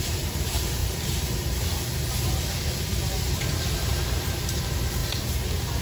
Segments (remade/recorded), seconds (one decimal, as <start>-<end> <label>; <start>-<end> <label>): 0.0-5.0 remade; 5.0-5.8 recorded